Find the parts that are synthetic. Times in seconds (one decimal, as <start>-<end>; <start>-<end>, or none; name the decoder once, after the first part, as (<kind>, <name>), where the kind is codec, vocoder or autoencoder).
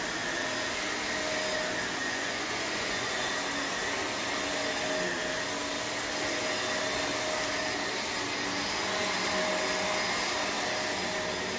2.0-3.3 (vocoder, Vocos)